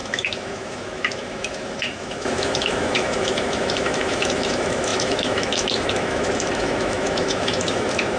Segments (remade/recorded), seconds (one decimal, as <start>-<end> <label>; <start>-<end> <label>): 0.0-8.2 remade